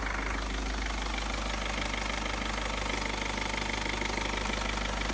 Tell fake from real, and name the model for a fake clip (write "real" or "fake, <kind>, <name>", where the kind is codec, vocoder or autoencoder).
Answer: real